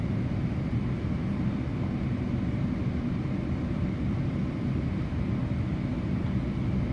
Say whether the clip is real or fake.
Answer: real